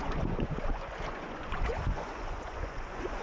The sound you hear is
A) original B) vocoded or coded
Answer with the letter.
B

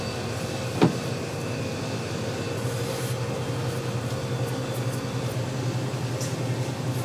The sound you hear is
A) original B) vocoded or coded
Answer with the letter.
A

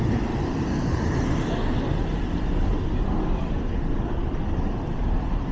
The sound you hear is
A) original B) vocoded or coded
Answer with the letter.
B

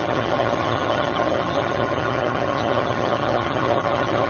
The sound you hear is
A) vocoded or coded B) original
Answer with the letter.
A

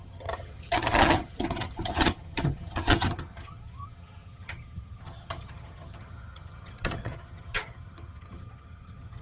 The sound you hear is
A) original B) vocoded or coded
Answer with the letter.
B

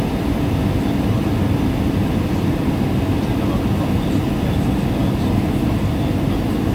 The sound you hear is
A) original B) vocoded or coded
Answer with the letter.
A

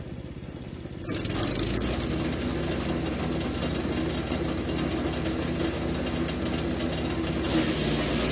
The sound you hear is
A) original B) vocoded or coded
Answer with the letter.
A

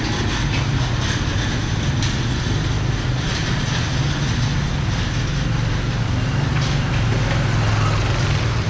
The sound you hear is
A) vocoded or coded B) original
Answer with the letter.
B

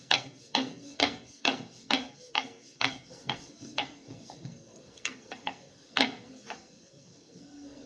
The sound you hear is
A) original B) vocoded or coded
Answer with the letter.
B